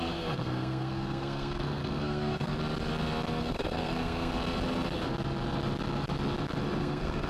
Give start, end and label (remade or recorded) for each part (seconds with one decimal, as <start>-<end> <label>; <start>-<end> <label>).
0.0-2.5 remade; 2.5-3.4 recorded; 3.4-4.3 remade; 4.3-6.8 recorded; 6.8-7.3 remade